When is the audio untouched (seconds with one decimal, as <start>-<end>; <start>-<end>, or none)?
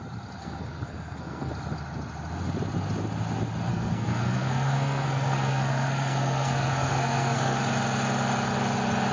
0.0-0.4; 1.5-3.7; 7.6-9.1